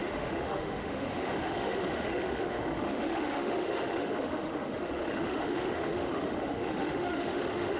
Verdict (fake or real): fake